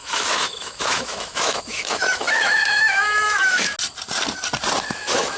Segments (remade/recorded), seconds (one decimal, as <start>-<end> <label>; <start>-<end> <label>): 0.0-3.7 remade; 3.7-4.9 recorded; 4.9-5.4 remade